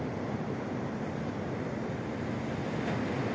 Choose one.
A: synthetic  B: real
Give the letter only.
B